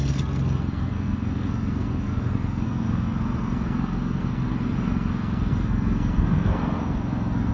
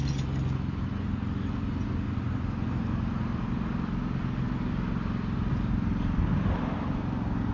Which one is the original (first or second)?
second